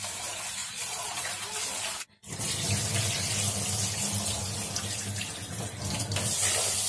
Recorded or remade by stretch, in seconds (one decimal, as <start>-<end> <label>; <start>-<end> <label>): 0.0-0.6 recorded; 0.6-1.3 remade; 1.3-6.9 recorded

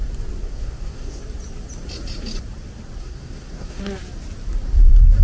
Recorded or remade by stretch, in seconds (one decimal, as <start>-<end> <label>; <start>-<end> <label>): 0.0-0.4 recorded; 0.4-1.2 remade; 1.2-3.0 recorded; 3.0-3.8 remade; 3.8-5.2 recorded

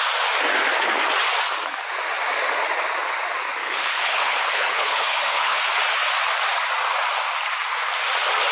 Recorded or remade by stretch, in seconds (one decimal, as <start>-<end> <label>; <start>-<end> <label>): 0.0-3.6 recorded; 3.6-5.6 remade; 5.6-8.5 recorded

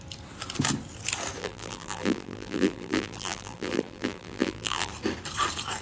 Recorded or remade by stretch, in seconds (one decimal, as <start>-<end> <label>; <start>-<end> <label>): 0.0-1.4 recorded; 1.4-4.9 remade; 4.9-5.8 recorded

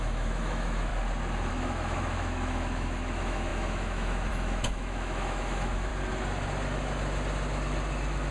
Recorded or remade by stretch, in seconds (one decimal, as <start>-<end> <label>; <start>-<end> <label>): 0.0-0.9 remade; 0.9-1.5 recorded; 1.5-5.9 remade; 5.9-8.3 recorded

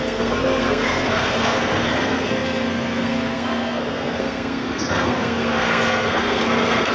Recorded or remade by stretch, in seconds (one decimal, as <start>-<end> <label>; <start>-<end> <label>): 0.0-6.9 remade